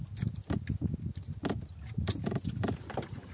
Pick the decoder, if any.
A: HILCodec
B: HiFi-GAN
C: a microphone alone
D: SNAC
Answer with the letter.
C